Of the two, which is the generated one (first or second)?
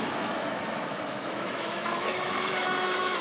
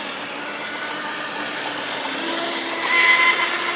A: first